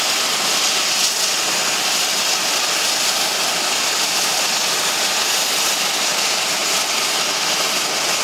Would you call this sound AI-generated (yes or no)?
no